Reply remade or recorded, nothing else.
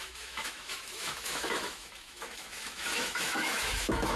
remade